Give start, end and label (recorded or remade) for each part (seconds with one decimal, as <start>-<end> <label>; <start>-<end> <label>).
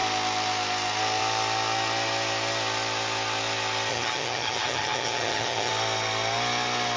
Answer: 0.0-3.9 recorded; 3.9-5.7 remade; 5.7-7.0 recorded